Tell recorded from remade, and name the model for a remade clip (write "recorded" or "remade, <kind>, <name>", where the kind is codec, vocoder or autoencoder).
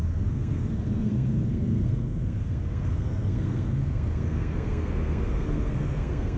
remade, codec, SNAC